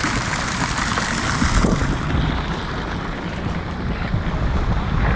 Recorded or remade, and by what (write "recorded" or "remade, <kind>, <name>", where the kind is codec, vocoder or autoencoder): recorded